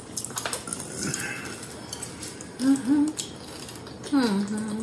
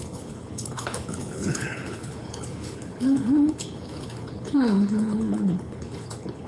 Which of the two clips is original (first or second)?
first